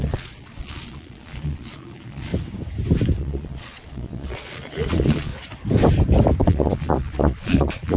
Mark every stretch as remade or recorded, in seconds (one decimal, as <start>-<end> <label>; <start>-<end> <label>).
0.0-2.3 remade; 2.3-3.2 recorded; 3.2-5.3 remade; 5.3-6.4 recorded; 6.4-8.0 remade